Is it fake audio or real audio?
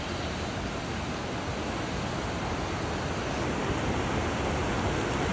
real